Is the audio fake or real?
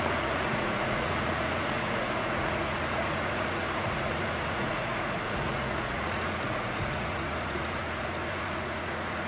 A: fake